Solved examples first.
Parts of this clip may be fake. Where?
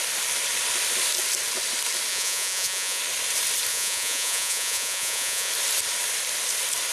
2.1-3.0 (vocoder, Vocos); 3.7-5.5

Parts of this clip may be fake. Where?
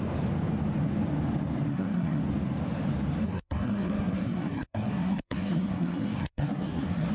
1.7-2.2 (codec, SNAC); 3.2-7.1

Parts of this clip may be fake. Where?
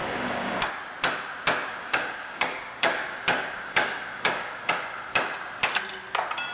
0.0-0.7 (codec, DAC); 1.7-4.7